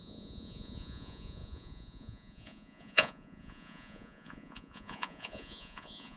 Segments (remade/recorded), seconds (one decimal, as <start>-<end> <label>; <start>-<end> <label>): 0.0-6.2 remade